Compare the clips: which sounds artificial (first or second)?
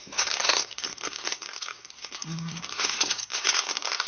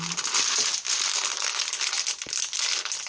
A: first